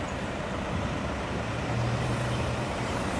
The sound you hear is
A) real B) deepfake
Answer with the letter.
B